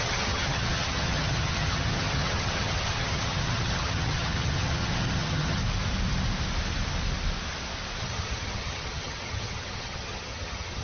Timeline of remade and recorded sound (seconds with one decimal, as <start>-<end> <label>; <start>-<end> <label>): 0.0-5.6 remade; 5.6-8.0 recorded; 8.0-10.8 remade